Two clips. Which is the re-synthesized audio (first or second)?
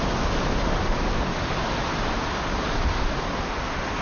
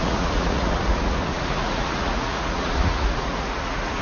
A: second